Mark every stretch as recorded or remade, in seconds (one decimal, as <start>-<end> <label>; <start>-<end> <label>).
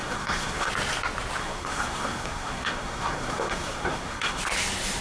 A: 0.0-0.7 remade; 0.7-1.4 recorded; 1.4-4.4 remade; 4.4-5.0 recorded